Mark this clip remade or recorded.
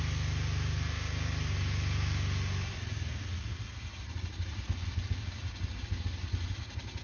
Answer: recorded